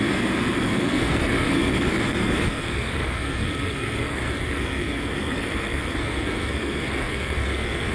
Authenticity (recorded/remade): remade